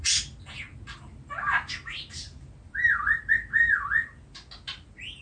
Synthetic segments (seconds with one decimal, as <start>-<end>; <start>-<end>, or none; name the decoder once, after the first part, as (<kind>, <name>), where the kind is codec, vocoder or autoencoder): none